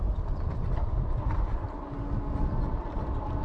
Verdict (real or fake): real